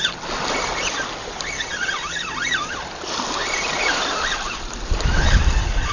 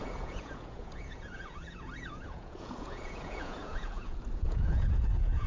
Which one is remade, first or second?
second